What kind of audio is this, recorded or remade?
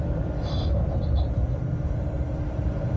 remade